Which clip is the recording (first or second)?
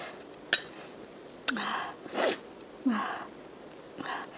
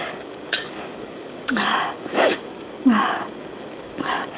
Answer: first